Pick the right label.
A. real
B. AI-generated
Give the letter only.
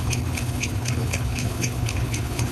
B